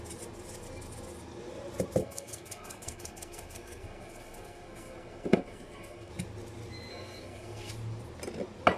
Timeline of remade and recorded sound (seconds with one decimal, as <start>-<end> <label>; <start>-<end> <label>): 0.0-2.0 recorded; 2.0-6.1 remade; 6.1-6.9 recorded; 6.9-7.7 remade; 7.7-8.8 recorded